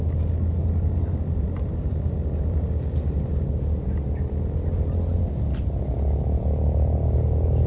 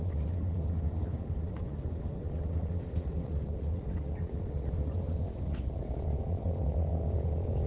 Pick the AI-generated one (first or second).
second